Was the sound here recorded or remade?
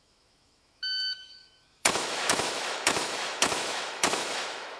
remade